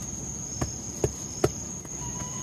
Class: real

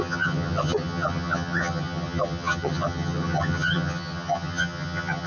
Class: fake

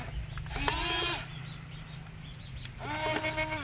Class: real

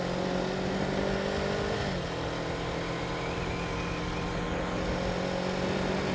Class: real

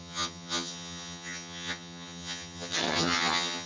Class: fake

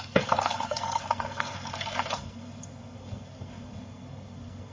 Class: fake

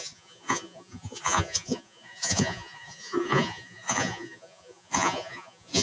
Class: fake